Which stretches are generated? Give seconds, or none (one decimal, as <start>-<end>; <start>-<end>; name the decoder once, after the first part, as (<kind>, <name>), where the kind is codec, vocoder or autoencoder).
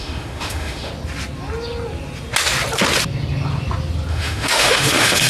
0.0-0.9 (autoencoder, DAC-VAE); 4.1-5.3